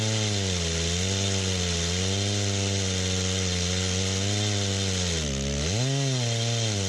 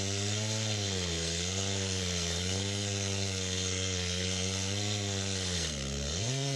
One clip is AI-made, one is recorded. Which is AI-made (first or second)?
second